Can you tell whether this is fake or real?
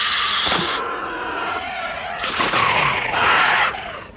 fake